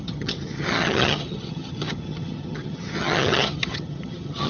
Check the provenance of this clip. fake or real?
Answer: fake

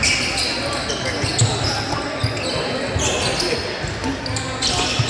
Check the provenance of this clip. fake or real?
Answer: real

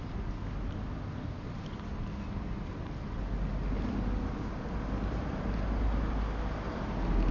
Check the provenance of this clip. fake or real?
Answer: real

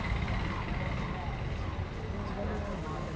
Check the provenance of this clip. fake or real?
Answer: real